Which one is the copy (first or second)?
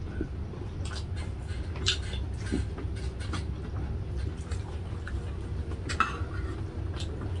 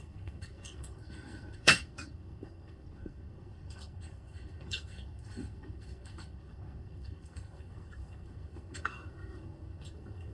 second